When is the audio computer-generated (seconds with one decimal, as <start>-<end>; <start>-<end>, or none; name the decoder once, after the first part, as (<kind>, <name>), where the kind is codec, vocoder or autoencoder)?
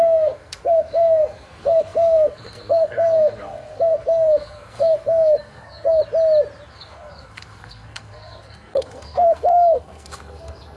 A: 0.0-6.0 (codec, SNAC); 6.7-10.8